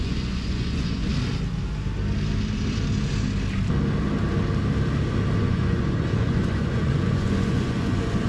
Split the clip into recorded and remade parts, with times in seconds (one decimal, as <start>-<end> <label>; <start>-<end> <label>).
0.0-1.1 remade; 1.1-5.4 recorded; 5.4-8.3 remade